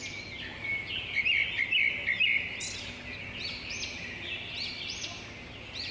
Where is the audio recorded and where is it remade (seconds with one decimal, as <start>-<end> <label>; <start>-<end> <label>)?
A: 0.0-5.9 recorded